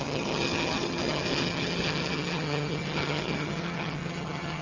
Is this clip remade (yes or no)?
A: yes